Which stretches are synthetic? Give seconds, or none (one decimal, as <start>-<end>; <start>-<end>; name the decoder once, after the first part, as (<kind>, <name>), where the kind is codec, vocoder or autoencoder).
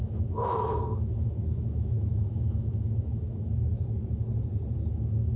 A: 0.0-3.7 (autoencoder, DAC-VAE); 4.9-5.4